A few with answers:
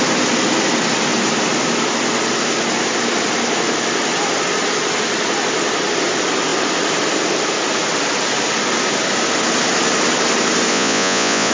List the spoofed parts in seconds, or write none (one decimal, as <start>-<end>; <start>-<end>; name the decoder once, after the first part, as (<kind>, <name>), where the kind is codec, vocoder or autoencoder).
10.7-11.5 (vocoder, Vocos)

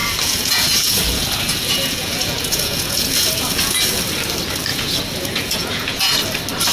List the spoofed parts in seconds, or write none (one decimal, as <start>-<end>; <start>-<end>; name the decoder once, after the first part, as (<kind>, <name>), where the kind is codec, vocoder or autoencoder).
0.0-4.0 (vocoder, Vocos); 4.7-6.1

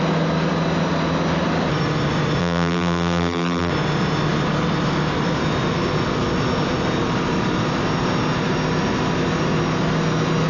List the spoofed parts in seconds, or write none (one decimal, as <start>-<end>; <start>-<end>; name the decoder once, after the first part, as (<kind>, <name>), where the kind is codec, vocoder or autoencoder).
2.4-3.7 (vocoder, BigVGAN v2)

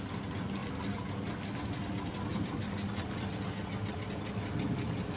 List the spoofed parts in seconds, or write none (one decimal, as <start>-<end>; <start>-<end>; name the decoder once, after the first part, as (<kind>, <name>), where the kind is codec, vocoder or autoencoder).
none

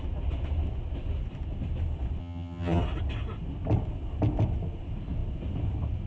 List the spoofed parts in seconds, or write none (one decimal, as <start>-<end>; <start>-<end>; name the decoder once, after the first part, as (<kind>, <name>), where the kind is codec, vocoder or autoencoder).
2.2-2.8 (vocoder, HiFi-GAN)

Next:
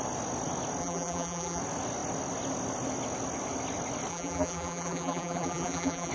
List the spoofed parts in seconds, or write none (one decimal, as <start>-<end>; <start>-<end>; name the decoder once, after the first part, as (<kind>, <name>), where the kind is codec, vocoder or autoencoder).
0.8-1.6 (vocoder, BigVGAN v2); 4.1-6.1

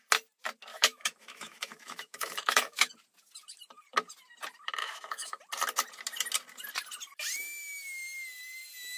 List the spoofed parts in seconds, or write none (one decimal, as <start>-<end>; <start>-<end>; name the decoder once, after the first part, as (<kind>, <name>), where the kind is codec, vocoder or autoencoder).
0.7-2.9 (autoencoder, DAC-VAE); 4.8-5.4

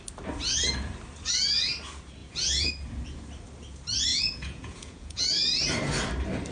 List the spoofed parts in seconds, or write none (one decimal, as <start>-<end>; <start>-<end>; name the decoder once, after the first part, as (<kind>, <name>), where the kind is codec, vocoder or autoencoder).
2.2-2.7 (vocoder, Vocos); 4.1-5.2